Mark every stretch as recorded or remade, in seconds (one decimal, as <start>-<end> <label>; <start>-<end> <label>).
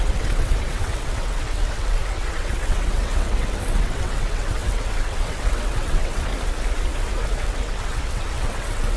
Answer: 0.0-6.3 remade; 6.3-7.0 recorded; 7.0-9.0 remade